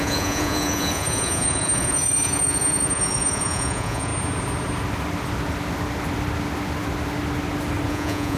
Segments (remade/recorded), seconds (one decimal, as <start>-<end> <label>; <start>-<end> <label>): 0.0-4.1 remade; 4.1-7.9 recorded; 7.9-8.4 remade